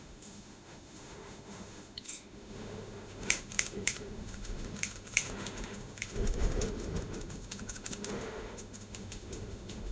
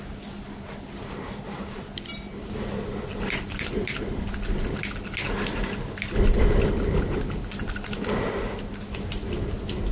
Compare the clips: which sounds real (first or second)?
second